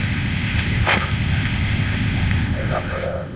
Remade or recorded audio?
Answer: remade